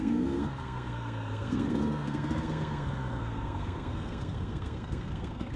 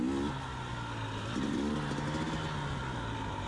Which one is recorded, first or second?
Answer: second